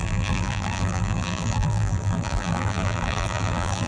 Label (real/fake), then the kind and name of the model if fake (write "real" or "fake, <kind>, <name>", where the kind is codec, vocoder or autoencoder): fake, vocoder, BigVGAN v2